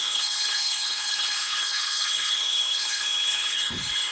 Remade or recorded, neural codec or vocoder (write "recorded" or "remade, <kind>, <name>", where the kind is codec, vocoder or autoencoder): remade, codec, HILCodec